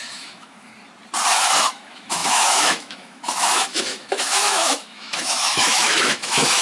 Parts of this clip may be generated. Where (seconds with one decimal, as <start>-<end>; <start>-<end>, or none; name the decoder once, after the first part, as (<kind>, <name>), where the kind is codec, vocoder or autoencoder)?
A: 0.0-0.7 (autoencoder, DAC-VAE); 1.6-6.6